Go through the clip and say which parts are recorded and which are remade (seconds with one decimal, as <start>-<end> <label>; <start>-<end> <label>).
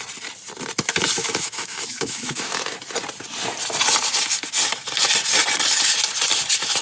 0.0-1.2 recorded; 1.2-2.6 remade; 2.6-6.8 recorded